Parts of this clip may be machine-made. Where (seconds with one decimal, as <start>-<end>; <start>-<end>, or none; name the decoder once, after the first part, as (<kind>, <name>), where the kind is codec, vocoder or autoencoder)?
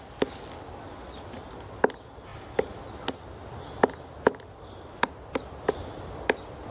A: none